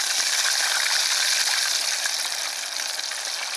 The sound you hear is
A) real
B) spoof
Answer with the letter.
A